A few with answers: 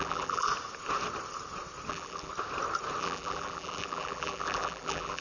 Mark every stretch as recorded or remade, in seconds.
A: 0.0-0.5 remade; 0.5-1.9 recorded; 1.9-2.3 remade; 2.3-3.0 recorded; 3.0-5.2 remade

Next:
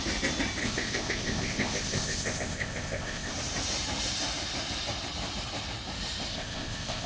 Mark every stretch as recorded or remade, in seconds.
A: 0.0-0.6 recorded; 0.6-3.3 remade; 3.3-6.3 recorded; 6.3-7.1 remade